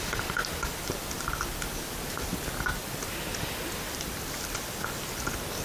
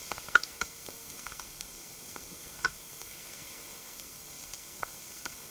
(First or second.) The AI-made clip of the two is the second